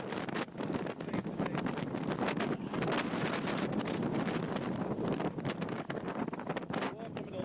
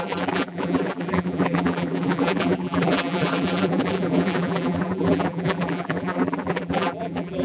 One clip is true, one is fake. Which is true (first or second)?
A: first